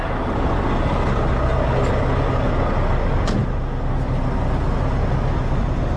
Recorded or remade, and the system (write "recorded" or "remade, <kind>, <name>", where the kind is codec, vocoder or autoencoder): recorded